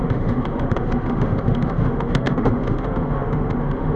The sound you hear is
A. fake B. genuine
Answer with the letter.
A